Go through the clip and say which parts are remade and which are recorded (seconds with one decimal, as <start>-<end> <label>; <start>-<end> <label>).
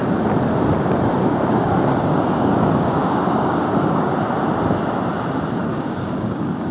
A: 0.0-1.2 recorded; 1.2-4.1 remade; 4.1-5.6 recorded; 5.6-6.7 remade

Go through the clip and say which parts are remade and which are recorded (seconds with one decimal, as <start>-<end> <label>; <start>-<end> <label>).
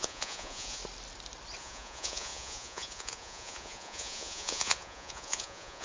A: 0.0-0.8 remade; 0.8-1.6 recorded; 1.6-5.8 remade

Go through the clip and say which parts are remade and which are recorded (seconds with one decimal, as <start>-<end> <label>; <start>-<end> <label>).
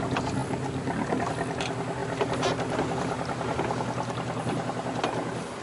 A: 0.0-2.0 recorded; 2.0-5.6 remade